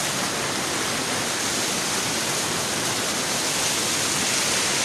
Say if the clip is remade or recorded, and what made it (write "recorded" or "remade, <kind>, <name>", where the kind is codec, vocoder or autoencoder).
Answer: recorded